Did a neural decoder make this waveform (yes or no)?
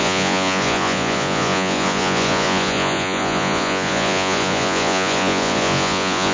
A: yes